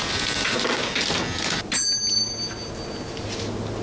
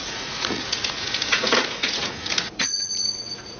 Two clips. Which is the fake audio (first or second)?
second